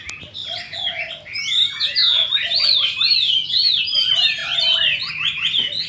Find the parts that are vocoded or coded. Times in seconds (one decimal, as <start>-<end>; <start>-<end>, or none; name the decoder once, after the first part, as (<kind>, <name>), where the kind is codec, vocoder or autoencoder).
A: none